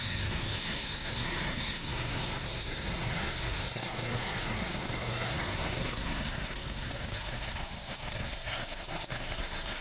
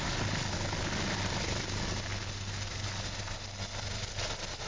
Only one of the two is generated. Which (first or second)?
first